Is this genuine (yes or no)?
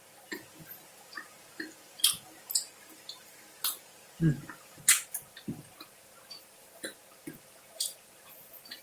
no